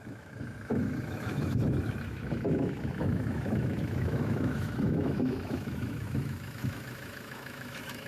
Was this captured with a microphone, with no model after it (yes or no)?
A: no